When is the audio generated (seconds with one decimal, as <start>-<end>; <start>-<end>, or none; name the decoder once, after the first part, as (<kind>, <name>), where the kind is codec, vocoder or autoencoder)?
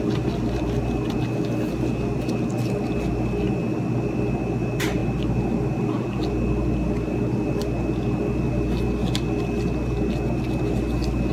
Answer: none